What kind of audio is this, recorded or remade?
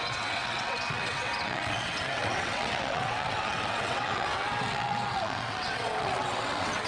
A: remade